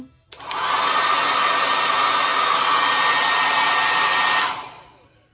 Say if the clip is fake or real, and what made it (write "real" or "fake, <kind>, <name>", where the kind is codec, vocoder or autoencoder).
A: real